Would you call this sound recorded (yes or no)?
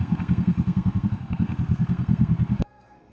no